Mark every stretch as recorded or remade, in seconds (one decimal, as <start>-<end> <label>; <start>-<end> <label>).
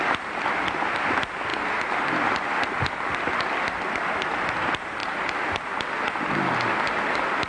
0.0-7.5 recorded